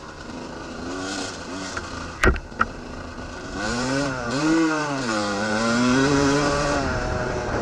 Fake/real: fake